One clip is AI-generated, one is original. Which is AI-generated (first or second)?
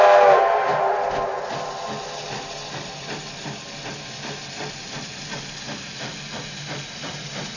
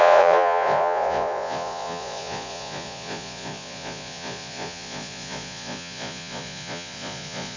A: second